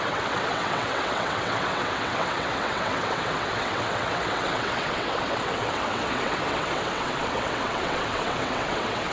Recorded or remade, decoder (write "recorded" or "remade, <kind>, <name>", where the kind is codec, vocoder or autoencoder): remade, vocoder, WaveNeXt